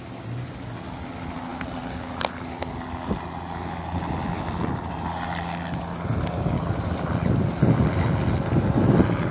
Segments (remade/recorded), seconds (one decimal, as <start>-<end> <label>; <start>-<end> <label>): 0.0-9.3 recorded

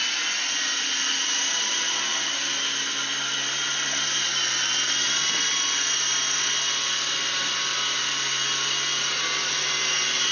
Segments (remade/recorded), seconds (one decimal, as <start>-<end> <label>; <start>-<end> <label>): 0.0-10.3 recorded